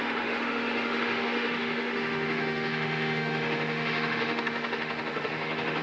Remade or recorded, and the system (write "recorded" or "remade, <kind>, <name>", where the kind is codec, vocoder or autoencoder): remade, autoencoder, DAC-VAE